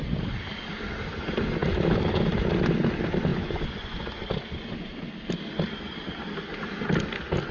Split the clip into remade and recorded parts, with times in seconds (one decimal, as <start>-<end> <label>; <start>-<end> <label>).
0.0-3.3 recorded; 3.3-4.1 remade; 4.1-7.5 recorded